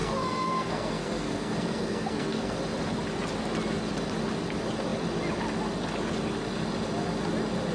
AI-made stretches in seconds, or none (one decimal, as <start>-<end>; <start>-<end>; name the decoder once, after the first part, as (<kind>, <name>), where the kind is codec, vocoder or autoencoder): 0.0-2.6 (codec, SNAC)